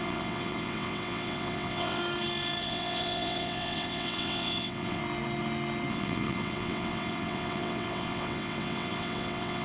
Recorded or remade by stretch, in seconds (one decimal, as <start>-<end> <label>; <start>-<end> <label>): 0.0-2.0 remade; 2.0-2.6 recorded; 2.6-5.0 remade; 5.0-5.9 recorded; 5.9-9.6 remade